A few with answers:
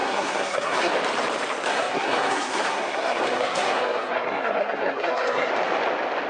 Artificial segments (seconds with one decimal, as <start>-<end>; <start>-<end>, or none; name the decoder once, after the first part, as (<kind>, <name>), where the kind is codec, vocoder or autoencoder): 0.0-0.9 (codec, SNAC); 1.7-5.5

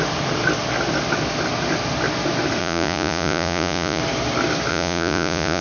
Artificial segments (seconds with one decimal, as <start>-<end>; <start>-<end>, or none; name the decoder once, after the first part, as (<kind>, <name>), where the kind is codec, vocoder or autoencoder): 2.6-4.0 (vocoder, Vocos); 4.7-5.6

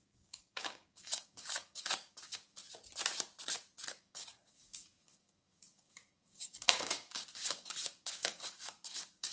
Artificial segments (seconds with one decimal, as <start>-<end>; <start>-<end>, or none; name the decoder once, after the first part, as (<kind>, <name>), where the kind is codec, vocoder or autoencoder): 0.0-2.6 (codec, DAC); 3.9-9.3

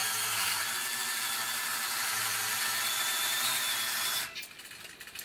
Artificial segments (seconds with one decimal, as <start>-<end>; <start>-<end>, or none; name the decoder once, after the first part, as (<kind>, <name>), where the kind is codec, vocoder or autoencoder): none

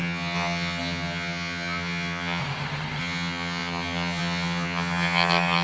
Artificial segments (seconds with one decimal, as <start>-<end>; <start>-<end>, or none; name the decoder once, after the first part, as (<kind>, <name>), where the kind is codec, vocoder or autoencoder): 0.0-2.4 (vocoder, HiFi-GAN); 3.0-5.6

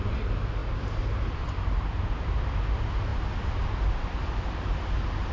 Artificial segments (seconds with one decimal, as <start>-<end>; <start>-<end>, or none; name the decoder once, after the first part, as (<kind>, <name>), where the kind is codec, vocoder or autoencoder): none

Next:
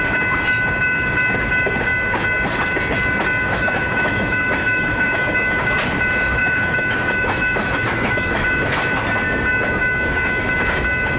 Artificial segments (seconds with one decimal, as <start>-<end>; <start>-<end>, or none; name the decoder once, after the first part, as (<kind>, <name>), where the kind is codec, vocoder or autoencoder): 3.4-5.6 (autoencoder, DAC-VAE); 6.3-8.8; 9.8-10.4